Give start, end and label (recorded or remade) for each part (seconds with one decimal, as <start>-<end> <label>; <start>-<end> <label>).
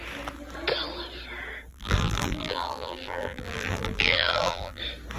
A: 0.0-1.7 recorded; 1.7-4.8 remade; 4.8-5.2 recorded